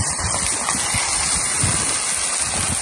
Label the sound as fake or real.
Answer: real